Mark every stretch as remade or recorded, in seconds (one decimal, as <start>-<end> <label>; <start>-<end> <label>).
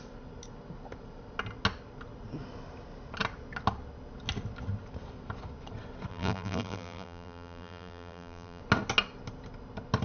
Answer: 0.0-6.1 recorded; 6.1-8.6 remade; 8.6-10.0 recorded